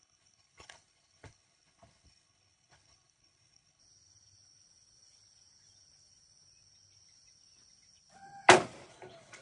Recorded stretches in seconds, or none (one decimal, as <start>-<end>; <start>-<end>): 3.8-8.9